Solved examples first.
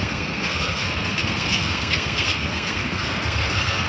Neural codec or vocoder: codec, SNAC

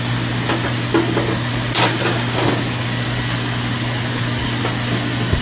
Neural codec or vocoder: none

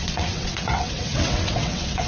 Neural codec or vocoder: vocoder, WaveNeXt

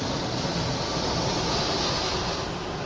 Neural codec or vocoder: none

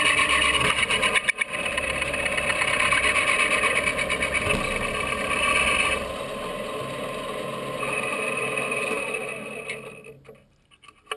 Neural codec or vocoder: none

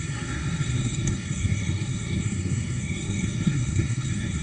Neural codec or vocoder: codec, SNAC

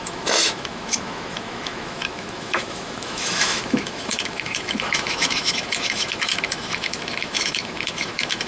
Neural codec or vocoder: autoencoder, DAC-VAE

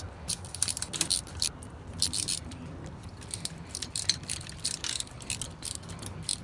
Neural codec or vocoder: vocoder, BigVGAN v2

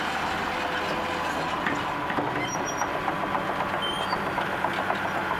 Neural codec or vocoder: none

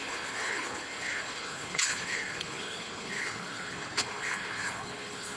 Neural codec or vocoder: codec, HILCodec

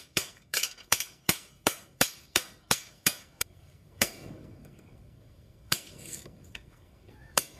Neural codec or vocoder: codec, SNAC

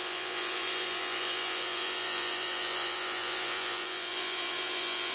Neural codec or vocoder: vocoder, Vocos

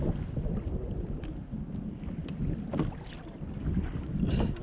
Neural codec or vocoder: none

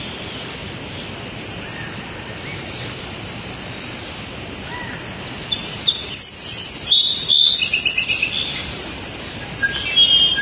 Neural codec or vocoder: none